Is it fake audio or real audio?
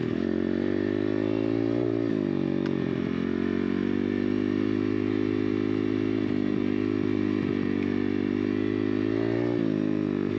real